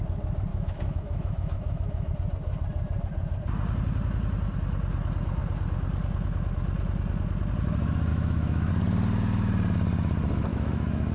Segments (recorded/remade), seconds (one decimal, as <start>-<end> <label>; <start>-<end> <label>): 0.0-0.5 recorded; 0.5-2.1 remade; 2.1-8.1 recorded; 8.1-8.7 remade; 8.7-10.5 recorded; 10.5-11.1 remade